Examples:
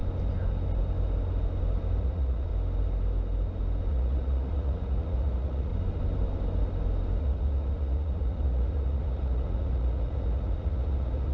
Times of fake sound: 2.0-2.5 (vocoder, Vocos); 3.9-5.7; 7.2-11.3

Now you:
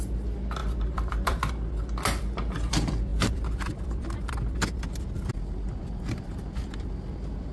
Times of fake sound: 0.6-1.5 (vocoder, BigVGAN v2); 3.1-5.3; 5.8-7.5

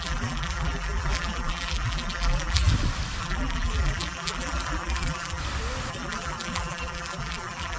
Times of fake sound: 0.0-2.7 (vocoder, BigVGAN v2); 3.2-5.4; 5.9-7.8

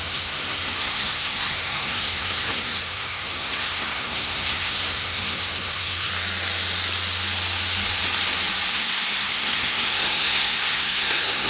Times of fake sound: 0.0-6.1 (codec, SNAC); 8.7-11.5